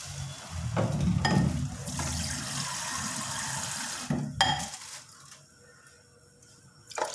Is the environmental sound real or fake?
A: real